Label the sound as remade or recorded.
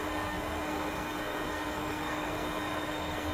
remade